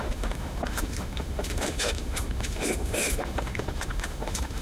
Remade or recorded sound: remade